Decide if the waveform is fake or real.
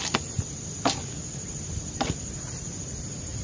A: real